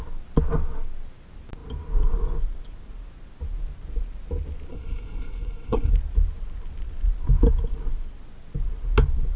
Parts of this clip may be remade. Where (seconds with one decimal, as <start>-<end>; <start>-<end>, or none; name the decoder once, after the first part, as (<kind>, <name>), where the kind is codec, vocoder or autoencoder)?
4.7-5.9 (codec, SNAC)